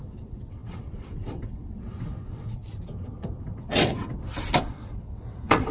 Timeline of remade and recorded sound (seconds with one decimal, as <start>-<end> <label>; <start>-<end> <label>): 0.0-2.6 remade; 2.6-3.4 recorded; 3.4-4.1 remade; 4.1-4.7 recorded; 4.7-5.7 remade